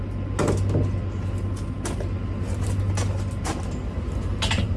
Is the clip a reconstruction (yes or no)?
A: no